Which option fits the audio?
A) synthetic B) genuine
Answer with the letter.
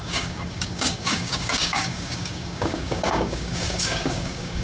A